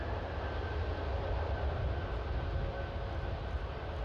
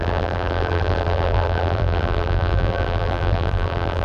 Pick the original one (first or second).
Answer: first